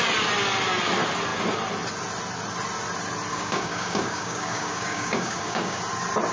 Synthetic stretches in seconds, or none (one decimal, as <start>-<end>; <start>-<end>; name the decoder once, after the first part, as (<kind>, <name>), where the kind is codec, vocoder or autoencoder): 3.3-5.8 (codec, DAC)